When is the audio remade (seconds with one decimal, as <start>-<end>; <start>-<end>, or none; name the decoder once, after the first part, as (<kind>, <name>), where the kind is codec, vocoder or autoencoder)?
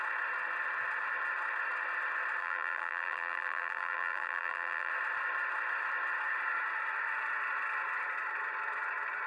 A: 2.4-4.9 (vocoder, BigVGAN v2)